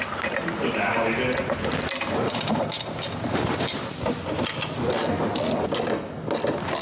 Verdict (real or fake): real